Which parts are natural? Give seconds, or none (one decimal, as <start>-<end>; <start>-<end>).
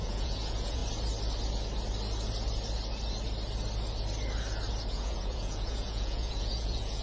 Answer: 0.8-4.9